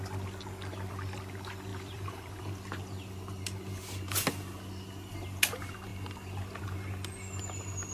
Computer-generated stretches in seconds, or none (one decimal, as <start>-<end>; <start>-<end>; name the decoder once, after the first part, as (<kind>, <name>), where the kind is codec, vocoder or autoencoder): 1.7-2.4 (vocoder, BigVGAN v2)